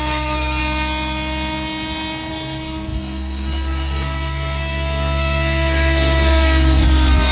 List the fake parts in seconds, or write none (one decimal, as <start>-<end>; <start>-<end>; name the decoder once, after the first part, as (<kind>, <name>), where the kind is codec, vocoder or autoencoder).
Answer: 0.0-0.6 (codec, SNAC); 2.3-7.3